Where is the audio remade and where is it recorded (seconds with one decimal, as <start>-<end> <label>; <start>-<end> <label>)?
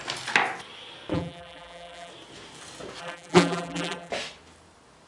0.0-1.1 recorded; 1.1-2.1 remade; 2.1-3.0 recorded; 3.0-4.1 remade; 4.1-5.1 recorded